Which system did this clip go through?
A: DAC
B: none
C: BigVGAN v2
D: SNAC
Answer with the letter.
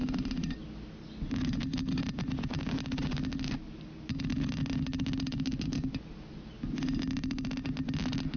B